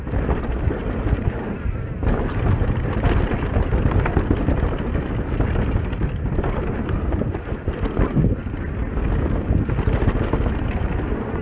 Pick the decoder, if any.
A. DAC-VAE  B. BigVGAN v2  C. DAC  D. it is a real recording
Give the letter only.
D